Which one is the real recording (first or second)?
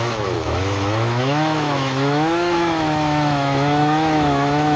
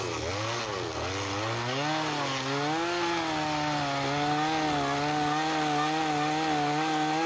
second